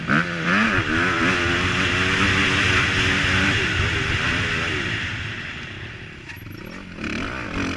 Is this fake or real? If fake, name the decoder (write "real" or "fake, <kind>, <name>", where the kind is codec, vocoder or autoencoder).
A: real